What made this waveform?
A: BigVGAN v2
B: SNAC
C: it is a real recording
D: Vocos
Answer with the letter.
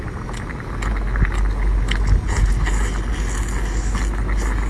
C